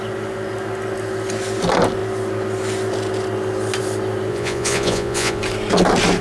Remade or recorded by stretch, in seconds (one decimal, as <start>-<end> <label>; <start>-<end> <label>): 0.0-4.3 recorded; 4.3-5.4 remade; 5.4-6.2 recorded